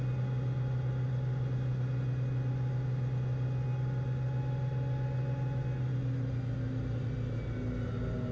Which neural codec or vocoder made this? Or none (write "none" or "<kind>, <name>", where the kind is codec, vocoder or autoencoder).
none